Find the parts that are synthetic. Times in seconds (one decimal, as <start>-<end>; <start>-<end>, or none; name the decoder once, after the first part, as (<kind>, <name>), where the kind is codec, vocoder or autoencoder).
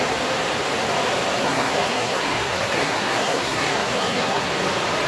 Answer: 1.4-4.5 (codec, SNAC)